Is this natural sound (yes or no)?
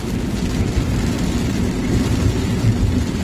no